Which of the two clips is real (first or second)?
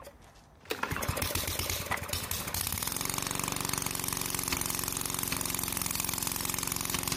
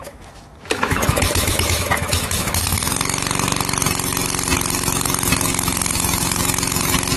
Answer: first